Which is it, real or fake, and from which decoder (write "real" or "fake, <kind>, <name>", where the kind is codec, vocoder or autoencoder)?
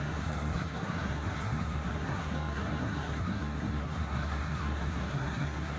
fake, codec, SNAC